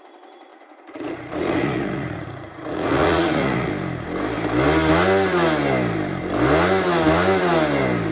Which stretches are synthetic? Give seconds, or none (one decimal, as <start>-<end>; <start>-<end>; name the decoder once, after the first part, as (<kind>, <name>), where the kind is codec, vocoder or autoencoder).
0.5-3.7 (vocoder, Vocos)